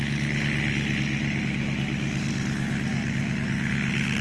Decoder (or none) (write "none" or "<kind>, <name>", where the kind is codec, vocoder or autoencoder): none